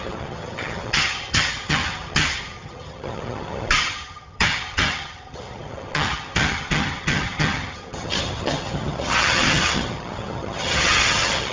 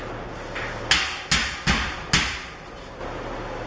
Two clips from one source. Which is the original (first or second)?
second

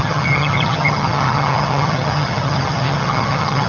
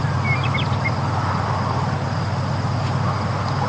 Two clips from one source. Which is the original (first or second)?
second